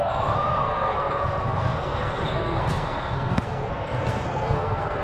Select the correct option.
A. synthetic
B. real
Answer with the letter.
A